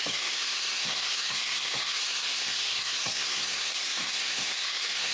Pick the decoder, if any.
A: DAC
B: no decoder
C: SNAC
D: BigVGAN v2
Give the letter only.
C